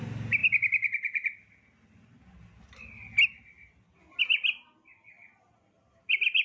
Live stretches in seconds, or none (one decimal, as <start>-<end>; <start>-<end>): 0.0-6.4